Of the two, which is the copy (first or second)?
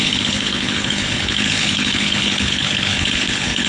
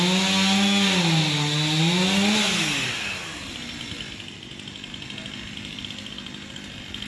first